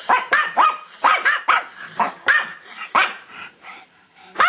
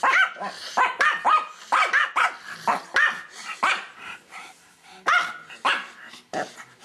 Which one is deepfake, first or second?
first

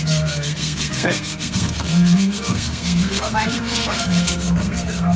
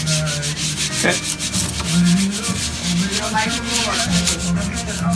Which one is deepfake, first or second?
first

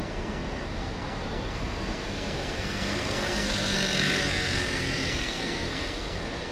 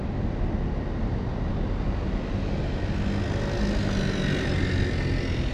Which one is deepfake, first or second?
first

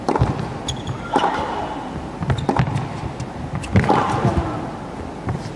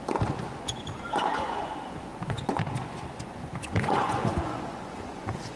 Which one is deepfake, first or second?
second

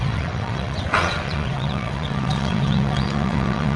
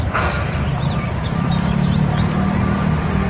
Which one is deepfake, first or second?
first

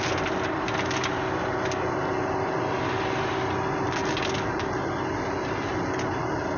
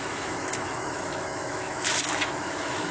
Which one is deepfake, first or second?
second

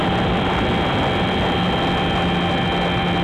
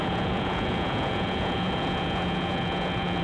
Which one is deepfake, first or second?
second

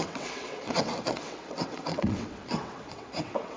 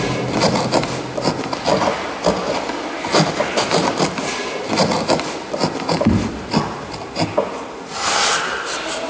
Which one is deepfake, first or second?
first